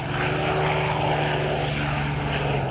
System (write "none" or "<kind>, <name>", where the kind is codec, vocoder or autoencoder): none